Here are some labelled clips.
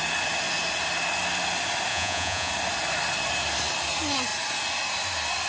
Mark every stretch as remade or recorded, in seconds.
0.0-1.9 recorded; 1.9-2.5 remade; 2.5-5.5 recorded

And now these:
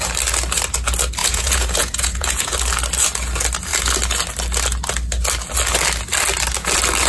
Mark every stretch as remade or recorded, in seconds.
0.0-1.2 recorded; 1.2-2.4 remade; 2.4-7.1 recorded

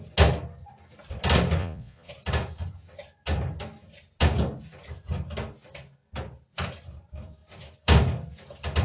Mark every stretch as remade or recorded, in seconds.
0.0-1.6 recorded; 1.6-2.1 remade; 2.1-8.8 recorded

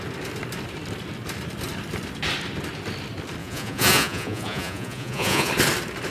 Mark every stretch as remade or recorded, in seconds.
0.0-3.4 recorded; 3.4-5.5 remade; 5.5-6.1 recorded